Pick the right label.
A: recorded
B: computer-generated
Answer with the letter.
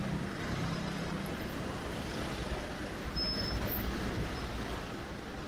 A